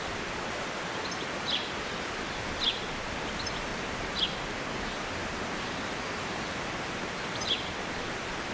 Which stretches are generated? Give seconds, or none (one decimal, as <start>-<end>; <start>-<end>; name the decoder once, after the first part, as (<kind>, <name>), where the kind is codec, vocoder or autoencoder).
0.0-3.7 (vocoder, BigVGAN v2); 4.7-5.2; 6.6-8.5